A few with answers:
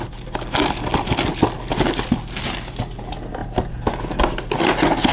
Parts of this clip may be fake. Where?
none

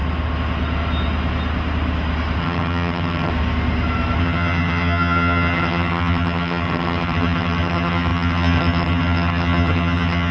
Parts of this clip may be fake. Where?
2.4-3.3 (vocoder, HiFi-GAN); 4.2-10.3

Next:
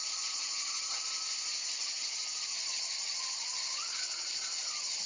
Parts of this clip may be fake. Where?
0.0-1.0 (vocoder, HiFi-GAN); 1.6-5.1

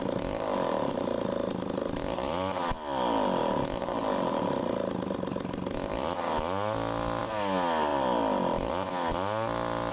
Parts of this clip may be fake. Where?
none